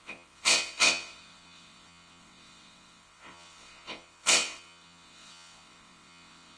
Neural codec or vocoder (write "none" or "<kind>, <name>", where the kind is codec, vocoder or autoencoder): vocoder, WaveNeXt